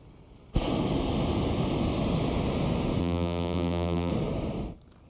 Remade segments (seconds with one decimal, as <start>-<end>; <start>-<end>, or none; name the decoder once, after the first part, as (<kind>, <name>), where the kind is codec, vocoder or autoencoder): 3.0-4.1 (vocoder, BigVGAN v2)